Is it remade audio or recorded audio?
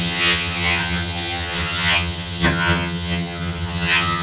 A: remade